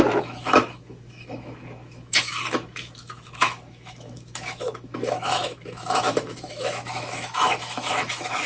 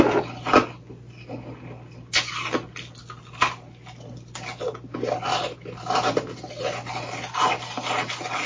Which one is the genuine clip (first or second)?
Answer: second